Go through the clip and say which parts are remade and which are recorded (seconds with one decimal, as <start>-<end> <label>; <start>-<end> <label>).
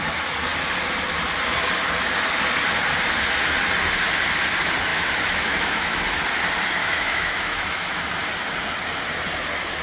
0.0-4.9 recorded; 4.9-6.0 remade; 6.0-6.8 recorded; 6.8-8.0 remade; 8.0-9.8 recorded